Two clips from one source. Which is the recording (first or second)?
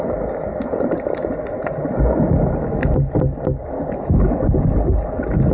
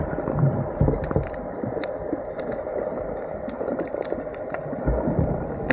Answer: first